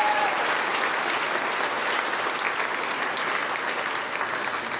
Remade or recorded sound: recorded